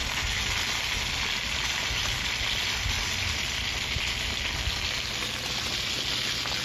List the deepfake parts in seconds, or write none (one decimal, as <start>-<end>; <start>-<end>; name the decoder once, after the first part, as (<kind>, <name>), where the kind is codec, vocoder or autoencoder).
none